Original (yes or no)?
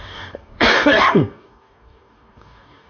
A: no